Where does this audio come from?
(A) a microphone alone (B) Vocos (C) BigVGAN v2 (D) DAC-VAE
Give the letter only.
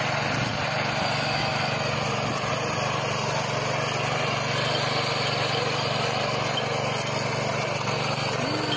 A